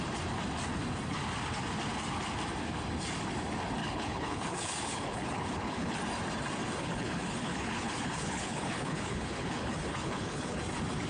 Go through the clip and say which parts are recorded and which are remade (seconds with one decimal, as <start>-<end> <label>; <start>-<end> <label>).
0.0-3.8 recorded; 3.8-6.0 remade; 6.0-6.8 recorded; 6.8-10.6 remade; 10.6-11.1 recorded